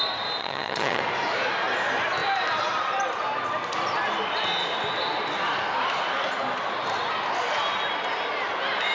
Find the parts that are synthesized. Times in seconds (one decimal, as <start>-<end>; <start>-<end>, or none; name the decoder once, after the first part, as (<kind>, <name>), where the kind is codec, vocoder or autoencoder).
0.4-1.0 (vocoder, HiFi-GAN)